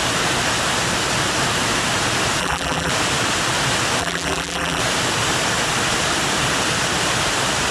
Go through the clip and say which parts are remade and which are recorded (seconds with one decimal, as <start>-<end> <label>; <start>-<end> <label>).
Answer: 0.0-2.4 recorded; 2.4-2.9 remade; 2.9-4.0 recorded; 4.0-4.8 remade; 4.8-7.7 recorded